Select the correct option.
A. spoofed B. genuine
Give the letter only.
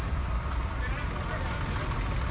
B